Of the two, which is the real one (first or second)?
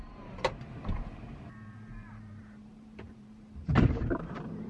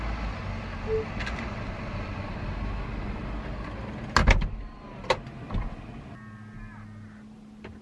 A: second